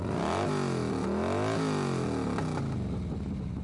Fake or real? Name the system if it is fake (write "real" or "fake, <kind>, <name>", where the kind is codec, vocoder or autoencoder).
real